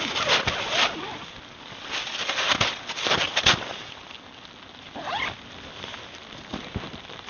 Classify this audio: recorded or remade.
recorded